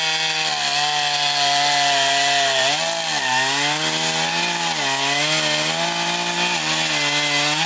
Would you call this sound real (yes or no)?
yes